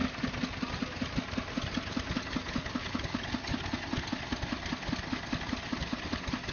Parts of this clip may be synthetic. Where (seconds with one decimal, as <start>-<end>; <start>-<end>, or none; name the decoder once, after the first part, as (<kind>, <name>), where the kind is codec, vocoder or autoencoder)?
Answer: none